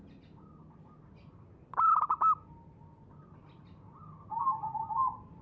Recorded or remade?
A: recorded